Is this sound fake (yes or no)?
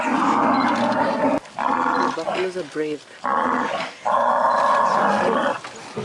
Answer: no